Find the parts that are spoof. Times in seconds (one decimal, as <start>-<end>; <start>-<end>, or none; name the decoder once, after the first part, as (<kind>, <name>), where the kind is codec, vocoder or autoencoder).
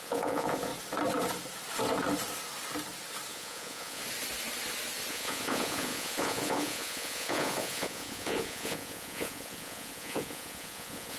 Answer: 0.0-0.7 (vocoder, Vocos); 3.3-4.0; 5.1-11.2